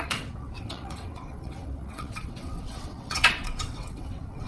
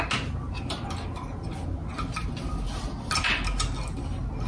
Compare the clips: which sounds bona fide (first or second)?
second